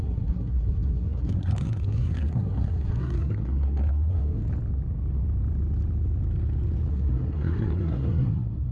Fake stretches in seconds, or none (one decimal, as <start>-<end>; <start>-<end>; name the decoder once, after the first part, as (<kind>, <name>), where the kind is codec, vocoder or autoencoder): 0.0-4.4 (codec, SNAC); 6.9-8.7